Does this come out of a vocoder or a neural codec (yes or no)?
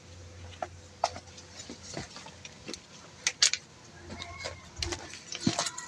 no